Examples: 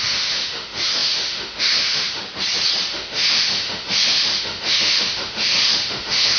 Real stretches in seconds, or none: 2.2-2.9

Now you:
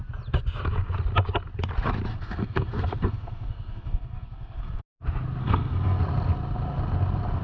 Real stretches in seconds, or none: 0.0-2.1; 4.8-5.4; 6.0-7.4

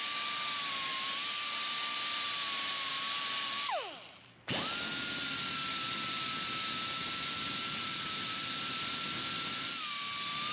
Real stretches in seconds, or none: 0.0-10.5

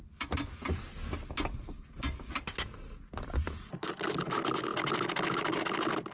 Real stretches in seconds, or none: 0.0-6.1

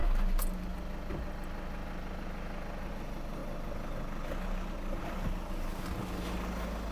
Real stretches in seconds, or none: 0.0-6.9

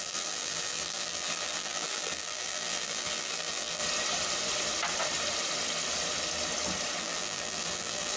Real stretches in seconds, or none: 3.8-7.0

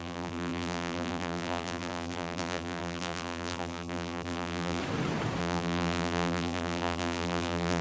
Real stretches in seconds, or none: 4.8-5.4

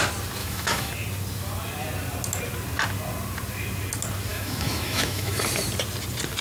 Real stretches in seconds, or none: 0.0-0.4; 0.9-4.3; 5.4-6.4